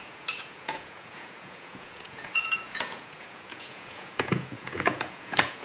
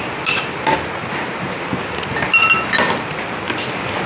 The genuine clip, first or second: second